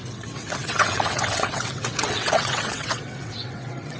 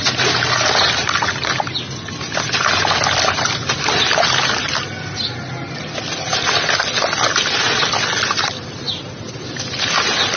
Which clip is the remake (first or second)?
first